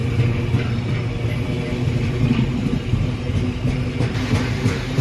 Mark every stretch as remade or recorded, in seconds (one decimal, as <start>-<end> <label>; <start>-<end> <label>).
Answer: 0.0-5.0 recorded